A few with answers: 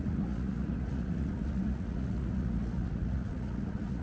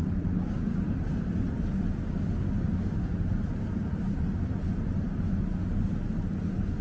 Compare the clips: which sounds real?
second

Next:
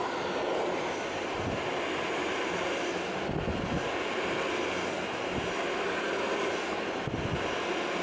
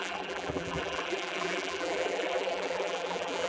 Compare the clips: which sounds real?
first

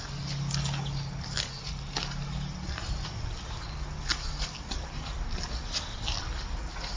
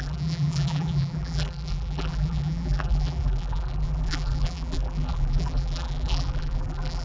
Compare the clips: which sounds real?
first